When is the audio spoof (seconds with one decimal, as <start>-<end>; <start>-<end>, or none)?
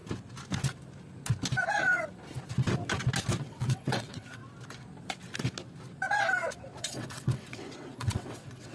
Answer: 3.4-4.4; 6.8-8.7